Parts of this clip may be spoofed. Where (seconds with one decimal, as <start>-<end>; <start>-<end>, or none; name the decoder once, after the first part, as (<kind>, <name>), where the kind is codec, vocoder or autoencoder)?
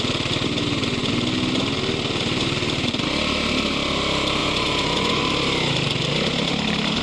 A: 4.4-5.2 (vocoder, Vocos)